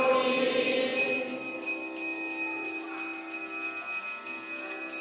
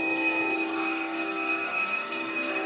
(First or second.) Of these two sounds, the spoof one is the second